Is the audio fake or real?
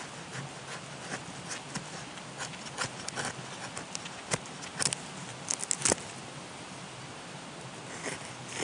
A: real